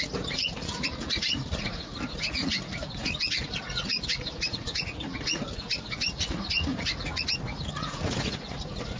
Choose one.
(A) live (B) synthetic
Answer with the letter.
B